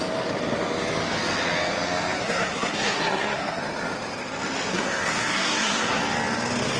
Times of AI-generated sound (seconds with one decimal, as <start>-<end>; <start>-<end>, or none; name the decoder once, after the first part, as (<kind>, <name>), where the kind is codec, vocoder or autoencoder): 2.2-3.6 (codec, SNAC); 4.7-6.0

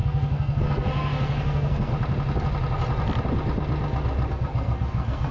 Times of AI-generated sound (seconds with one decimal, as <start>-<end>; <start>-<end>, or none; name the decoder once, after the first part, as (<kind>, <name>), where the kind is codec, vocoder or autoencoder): 0.0-1.9 (codec, SNAC); 4.3-5.3

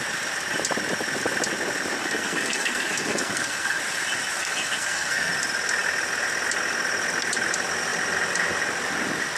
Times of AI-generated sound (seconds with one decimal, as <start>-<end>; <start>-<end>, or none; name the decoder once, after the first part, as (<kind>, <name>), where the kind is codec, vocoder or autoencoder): 2.0-3.8 (codec, SNAC); 4.4-5.3

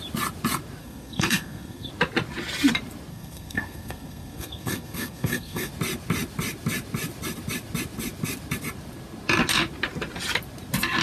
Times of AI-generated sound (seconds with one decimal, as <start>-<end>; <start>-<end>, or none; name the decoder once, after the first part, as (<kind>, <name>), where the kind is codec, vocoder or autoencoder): 0.8-1.9 (codec, SNAC); 3.1-5.7

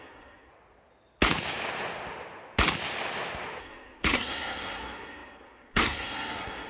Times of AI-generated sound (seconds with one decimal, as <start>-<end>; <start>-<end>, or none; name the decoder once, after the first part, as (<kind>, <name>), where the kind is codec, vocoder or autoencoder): 0.0-0.5 (codec, SNAC); 3.6-6.7

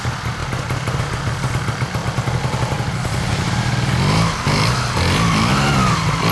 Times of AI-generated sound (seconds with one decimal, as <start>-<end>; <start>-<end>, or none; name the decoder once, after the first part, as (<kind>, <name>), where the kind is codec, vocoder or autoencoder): none

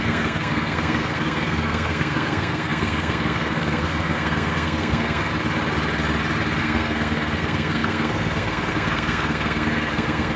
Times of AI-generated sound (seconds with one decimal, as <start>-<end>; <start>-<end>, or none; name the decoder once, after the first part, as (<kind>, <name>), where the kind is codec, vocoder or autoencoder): 0.0-5.3 (codec, SNAC); 6.6-10.4